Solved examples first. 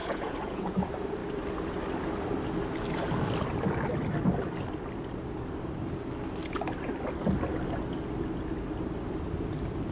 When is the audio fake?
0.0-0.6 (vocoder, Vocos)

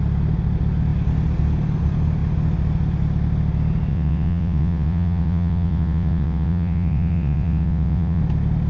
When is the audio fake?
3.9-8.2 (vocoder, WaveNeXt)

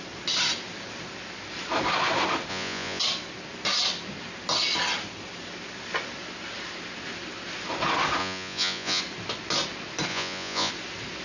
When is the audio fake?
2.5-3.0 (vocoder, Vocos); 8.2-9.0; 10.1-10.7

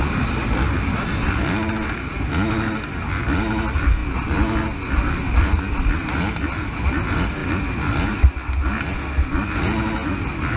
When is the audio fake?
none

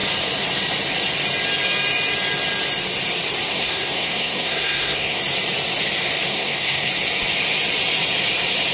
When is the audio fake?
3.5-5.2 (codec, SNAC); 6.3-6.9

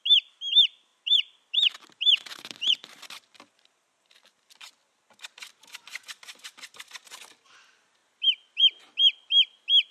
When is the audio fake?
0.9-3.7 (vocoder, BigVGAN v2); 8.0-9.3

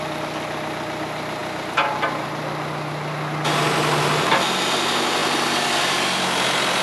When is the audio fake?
none